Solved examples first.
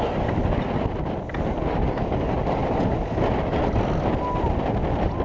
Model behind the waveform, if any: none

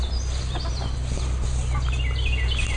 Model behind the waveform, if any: none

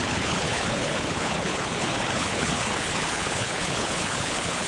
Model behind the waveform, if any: codec, HILCodec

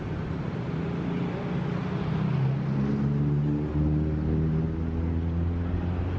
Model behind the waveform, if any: none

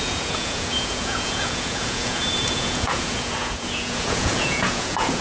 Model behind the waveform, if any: vocoder, Vocos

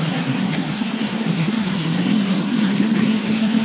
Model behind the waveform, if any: codec, SNAC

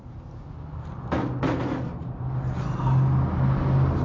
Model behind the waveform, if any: none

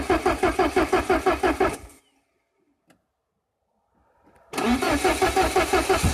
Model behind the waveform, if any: none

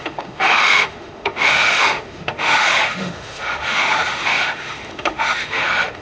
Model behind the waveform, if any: autoencoder, DAC-VAE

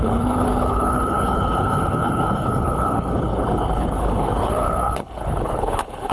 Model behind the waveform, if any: codec, HILCodec